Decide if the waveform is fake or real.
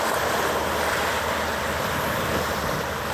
real